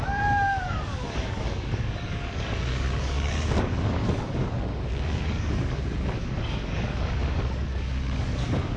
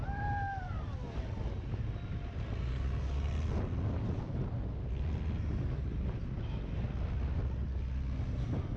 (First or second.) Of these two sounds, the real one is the second